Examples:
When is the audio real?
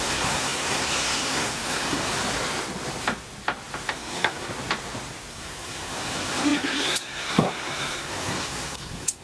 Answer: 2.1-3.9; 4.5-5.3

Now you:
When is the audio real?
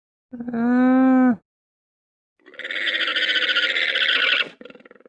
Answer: 0.0-5.1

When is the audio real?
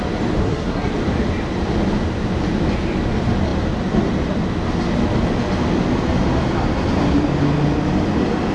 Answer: 0.0-0.4; 0.9-8.5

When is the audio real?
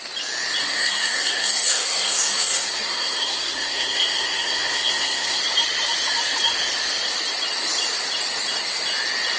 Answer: 0.0-0.6; 5.4-9.4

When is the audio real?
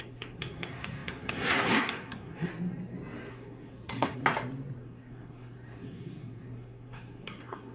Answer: 2.5-3.3; 4.2-4.8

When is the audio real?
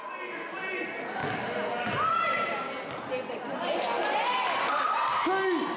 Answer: 0.0-5.8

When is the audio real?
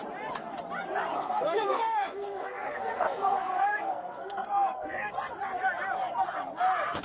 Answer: 0.0-1.1; 5.1-7.0